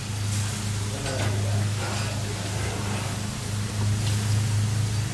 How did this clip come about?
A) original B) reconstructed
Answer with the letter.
A